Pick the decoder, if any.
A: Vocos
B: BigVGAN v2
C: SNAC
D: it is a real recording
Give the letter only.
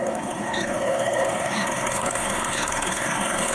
C